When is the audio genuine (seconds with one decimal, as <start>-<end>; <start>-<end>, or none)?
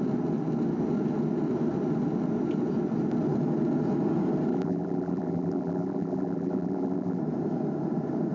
0.0-4.5; 7.2-8.3